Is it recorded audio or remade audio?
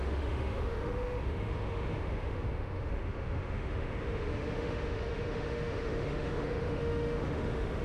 remade